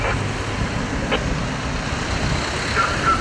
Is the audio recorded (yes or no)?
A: yes